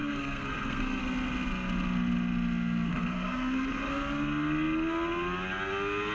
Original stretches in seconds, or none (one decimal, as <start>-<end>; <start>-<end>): 1.0-2.9; 3.9-6.1